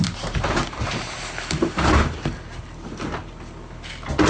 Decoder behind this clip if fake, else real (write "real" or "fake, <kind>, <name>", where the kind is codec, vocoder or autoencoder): real